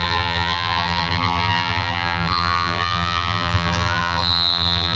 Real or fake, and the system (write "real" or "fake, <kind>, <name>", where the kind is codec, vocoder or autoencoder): fake, vocoder, BigVGAN v2